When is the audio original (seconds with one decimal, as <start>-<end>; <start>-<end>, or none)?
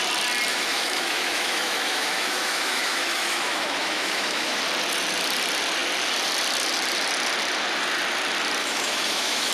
0.0-0.5; 4.6-8.6